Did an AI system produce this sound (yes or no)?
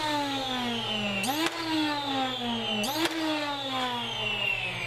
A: no